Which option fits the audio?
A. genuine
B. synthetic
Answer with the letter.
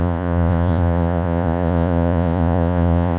B